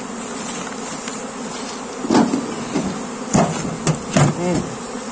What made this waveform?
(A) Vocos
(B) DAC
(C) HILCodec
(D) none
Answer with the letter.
D